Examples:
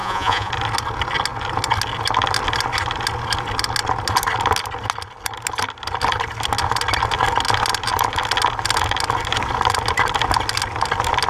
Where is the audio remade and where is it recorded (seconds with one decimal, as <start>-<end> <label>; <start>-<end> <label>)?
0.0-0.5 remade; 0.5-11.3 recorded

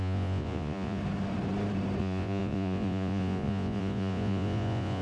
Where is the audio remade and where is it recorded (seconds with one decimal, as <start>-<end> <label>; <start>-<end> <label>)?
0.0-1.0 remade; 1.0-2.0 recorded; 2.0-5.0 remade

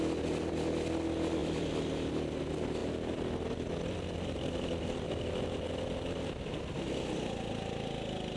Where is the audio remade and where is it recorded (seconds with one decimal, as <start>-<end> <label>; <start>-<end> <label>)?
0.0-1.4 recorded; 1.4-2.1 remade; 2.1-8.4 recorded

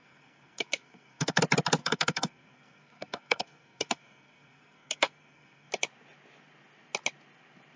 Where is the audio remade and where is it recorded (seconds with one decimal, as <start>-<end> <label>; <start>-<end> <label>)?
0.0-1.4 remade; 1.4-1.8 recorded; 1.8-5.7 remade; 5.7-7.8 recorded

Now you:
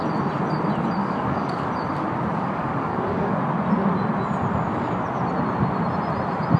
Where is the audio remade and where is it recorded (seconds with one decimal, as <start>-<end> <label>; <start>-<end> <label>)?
0.0-1.0 recorded; 1.0-1.7 remade; 1.7-2.3 recorded; 2.3-3.4 remade; 3.4-6.6 recorded

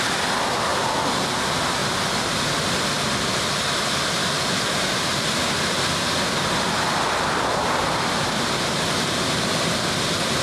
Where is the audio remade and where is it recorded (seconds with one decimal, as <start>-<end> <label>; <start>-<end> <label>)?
0.0-10.4 recorded

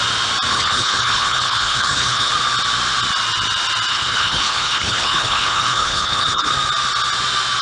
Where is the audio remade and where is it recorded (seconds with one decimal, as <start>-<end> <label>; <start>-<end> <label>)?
0.0-0.5 recorded; 0.5-2.3 remade; 2.3-3.9 recorded; 3.9-6.5 remade; 6.5-7.6 recorded

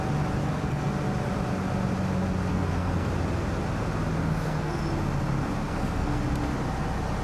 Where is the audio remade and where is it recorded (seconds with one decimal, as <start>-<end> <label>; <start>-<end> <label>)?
0.0-0.4 recorded; 0.4-0.9 remade; 0.9-2.5 recorded; 2.5-3.1 remade; 3.1-4.2 recorded; 4.2-4.8 remade; 4.8-5.6 recorded; 5.6-6.2 remade; 6.2-7.2 recorded